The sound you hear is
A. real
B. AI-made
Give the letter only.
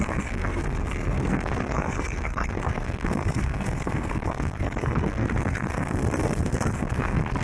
B